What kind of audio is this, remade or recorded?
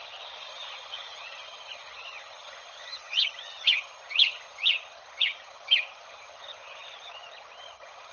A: remade